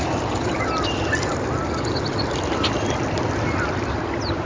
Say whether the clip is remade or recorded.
recorded